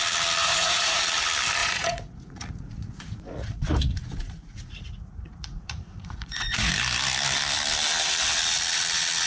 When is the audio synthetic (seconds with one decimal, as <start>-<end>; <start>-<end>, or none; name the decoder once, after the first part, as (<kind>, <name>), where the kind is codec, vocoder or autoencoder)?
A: 0.4-1.0 (vocoder, Vocos); 1.6-6.7